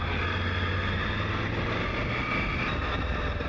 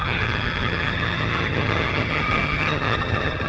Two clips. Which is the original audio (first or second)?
first